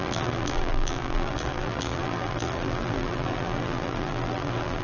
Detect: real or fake fake